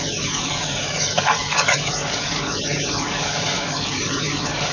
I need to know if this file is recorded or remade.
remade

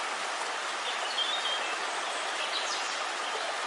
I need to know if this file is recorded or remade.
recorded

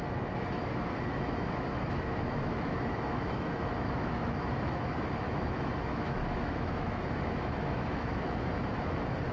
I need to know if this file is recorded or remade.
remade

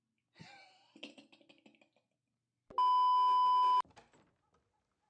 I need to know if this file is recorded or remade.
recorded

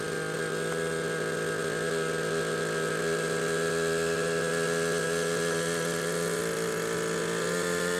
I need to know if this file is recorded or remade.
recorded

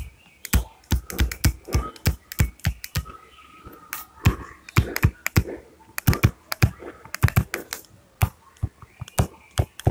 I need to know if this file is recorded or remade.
recorded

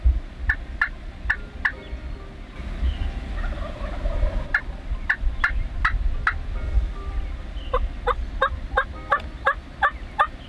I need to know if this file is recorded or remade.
recorded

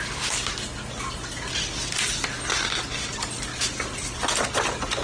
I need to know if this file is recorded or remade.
recorded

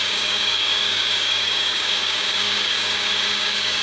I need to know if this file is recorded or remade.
remade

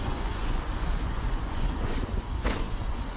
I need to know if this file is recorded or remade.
remade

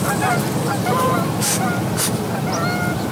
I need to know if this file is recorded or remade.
recorded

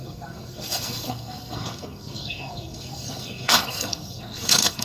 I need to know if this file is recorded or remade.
remade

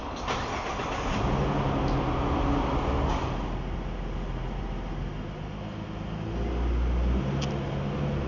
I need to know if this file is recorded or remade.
recorded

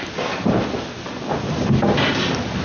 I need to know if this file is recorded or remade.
recorded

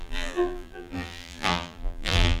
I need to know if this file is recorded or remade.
remade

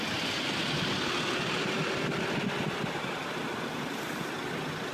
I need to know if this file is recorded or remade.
recorded